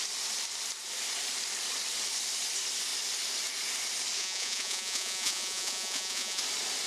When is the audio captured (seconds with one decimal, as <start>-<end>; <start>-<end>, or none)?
0.0-4.2; 6.4-6.9